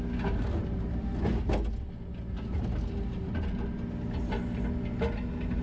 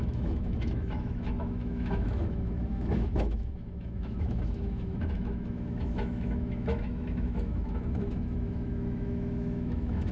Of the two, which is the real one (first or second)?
first